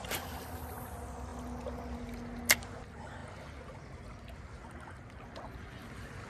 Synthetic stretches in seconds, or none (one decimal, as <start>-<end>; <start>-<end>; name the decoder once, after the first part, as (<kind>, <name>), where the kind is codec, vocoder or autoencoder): none